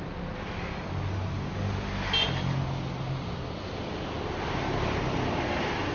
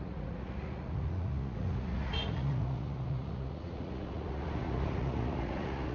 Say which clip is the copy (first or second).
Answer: second